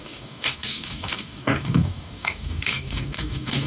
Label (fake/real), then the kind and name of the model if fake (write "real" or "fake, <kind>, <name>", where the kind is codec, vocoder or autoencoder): fake, codec, DAC